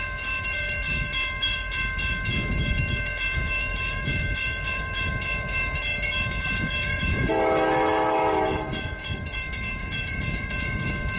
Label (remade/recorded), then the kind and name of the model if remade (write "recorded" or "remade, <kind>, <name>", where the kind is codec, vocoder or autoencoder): remade, autoencoder, DAC-VAE